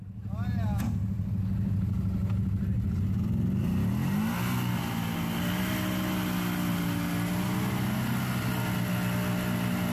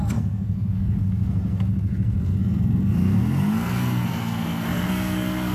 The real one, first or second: first